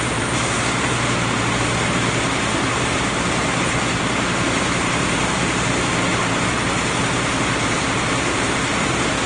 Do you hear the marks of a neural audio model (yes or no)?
yes